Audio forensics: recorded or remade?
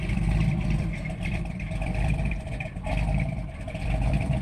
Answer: remade